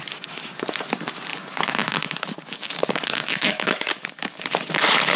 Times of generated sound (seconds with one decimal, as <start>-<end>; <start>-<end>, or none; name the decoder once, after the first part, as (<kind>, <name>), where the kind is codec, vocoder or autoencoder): 1.3-4.4 (codec, DAC)